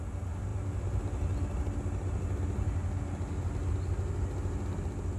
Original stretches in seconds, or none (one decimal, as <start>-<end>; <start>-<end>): 0.0-5.2